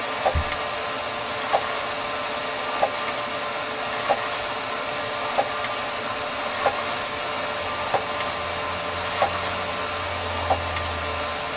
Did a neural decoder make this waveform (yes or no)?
no